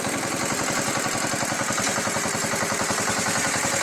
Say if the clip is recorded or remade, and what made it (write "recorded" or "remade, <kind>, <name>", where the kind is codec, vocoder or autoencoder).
recorded